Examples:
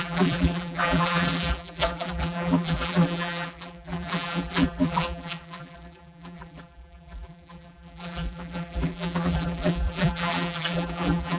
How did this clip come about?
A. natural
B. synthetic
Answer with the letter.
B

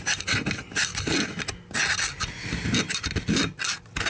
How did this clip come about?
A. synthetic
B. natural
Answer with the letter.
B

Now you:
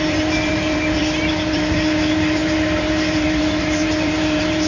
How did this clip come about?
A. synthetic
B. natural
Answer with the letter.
A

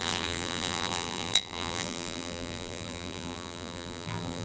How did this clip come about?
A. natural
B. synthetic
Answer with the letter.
B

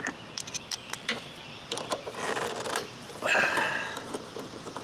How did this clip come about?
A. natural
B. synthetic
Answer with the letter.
B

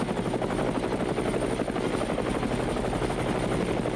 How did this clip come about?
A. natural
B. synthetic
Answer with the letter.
A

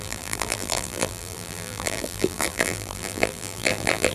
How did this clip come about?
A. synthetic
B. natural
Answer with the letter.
A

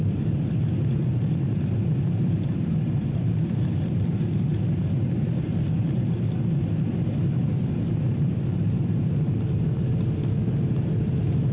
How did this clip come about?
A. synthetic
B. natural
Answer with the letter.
A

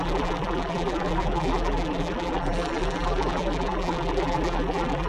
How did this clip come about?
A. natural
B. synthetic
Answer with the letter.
B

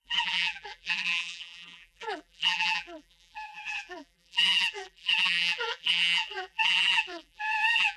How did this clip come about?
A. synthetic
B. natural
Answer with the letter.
A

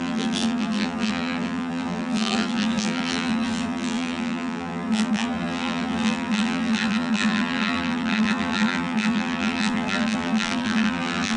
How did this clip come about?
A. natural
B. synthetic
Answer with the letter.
B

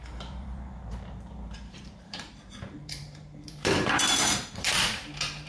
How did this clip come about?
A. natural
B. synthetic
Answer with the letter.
B